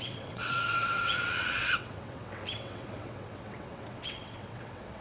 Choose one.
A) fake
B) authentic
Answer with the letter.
A